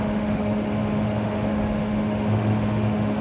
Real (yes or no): no